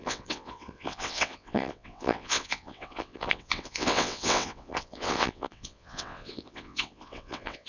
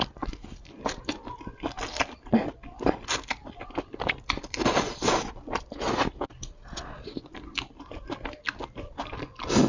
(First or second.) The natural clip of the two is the second